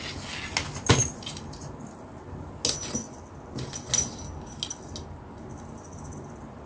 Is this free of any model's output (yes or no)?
yes